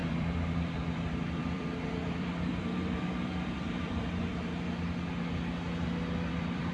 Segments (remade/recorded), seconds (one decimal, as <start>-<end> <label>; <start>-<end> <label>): 0.0-4.3 remade; 4.3-6.3 recorded; 6.3-6.7 remade